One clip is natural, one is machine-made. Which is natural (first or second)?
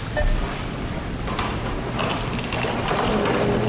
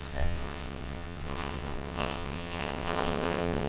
first